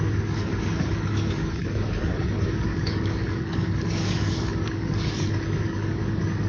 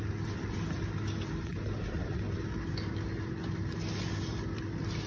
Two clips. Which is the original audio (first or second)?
second